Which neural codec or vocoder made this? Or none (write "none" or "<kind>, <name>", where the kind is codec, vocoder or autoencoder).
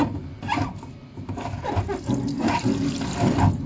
none